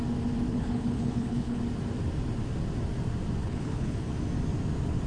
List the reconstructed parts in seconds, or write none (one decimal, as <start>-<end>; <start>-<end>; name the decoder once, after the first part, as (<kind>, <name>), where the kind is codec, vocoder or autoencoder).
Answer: 0.5-1.6 (codec, HILCodec); 3.4-4.1